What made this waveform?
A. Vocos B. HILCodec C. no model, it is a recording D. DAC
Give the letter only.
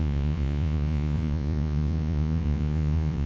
A